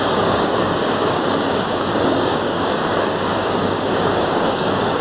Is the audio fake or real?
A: fake